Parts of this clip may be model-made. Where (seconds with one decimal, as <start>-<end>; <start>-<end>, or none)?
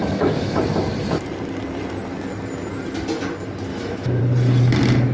0.0-0.6; 3.7-4.2